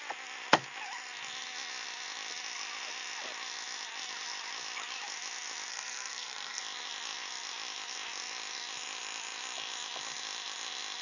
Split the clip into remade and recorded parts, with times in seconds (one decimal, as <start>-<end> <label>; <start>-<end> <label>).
0.0-5.7 recorded; 5.7-6.6 remade; 6.6-11.0 recorded